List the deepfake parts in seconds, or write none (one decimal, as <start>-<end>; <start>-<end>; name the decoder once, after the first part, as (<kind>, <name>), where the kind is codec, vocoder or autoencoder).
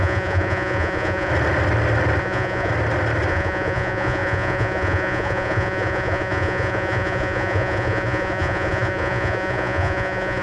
0.0-1.3 (vocoder, Vocos); 2.2-2.7; 3.3-10.4